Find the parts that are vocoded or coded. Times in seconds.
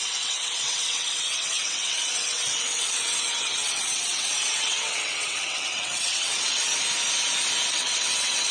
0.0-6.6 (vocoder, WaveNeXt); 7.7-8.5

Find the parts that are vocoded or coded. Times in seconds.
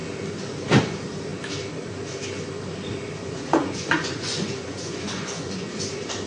3.2-5.8 (vocoder, Vocos)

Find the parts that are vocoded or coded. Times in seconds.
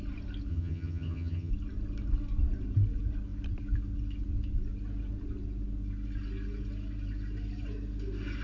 0.5-1.5 (vocoder, HiFi-GAN)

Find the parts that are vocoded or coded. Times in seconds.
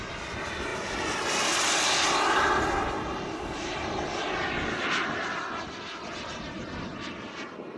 none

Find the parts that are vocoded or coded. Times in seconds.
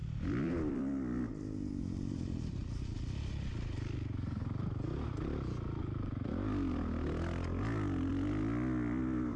0.0-2.6 (vocoder, BigVGAN v2); 6.7-8.1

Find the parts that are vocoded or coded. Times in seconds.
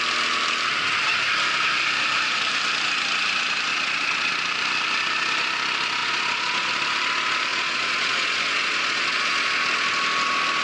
3.7-4.3 (vocoder, Vocos); 6.0-6.7; 7.5-9.5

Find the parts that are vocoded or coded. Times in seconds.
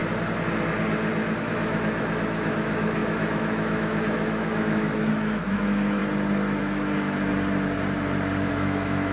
1.4-6.0 (autoencoder, DAC-VAE); 6.6-7.3; 8.5-9.1